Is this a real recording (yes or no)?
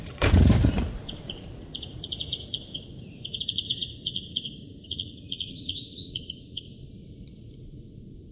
no